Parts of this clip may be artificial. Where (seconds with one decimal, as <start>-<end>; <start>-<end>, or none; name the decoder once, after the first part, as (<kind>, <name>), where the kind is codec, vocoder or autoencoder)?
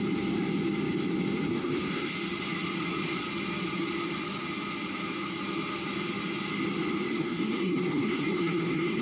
1.5-2.1 (codec, SNAC); 7.1-9.0